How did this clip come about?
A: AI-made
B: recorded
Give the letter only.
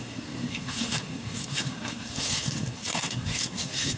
A